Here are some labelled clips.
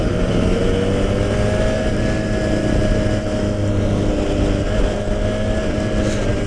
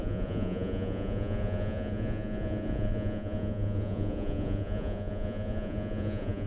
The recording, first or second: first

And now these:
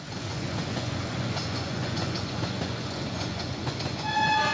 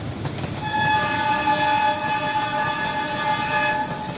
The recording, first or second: second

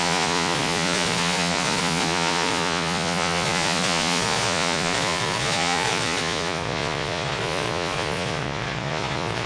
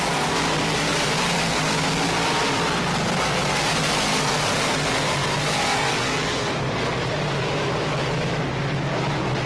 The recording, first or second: second